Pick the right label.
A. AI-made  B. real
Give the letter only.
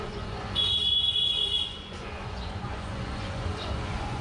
A